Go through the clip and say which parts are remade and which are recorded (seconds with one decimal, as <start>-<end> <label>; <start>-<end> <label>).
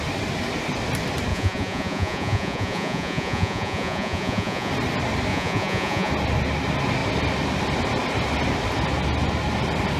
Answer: 0.0-1.3 recorded; 1.3-4.7 remade; 4.7-5.3 recorded; 5.3-6.1 remade; 6.1-10.0 recorded